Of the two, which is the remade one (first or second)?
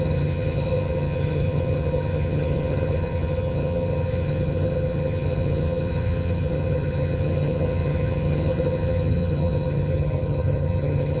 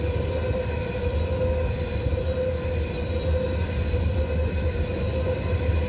first